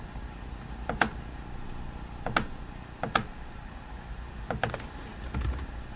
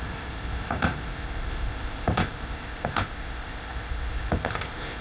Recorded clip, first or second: first